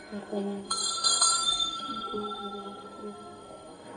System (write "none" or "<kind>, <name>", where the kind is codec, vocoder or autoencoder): codec, SNAC